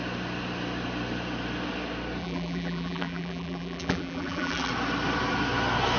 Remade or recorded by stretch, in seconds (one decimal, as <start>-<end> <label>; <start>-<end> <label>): 0.0-2.2 recorded; 2.2-4.7 remade; 4.7-6.0 recorded